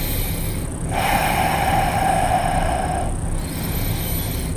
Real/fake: real